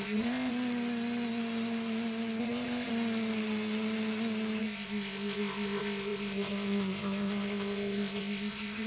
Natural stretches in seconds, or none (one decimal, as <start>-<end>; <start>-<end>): 0.5-2.4; 2.9-4.6